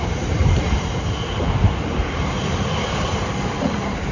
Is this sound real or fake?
fake